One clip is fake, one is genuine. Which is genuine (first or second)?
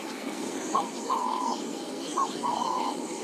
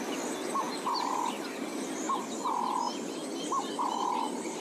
second